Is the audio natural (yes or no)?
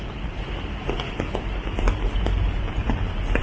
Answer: yes